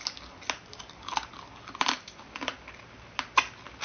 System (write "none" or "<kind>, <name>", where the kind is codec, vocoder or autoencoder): none